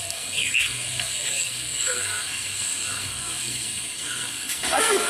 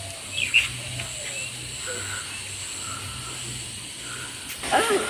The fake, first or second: first